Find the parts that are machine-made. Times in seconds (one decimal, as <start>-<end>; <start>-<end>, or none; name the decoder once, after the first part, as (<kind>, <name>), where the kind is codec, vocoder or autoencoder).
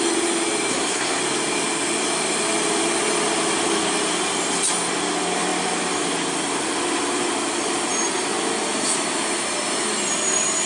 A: 0.7-1.2 (codec, SNAC)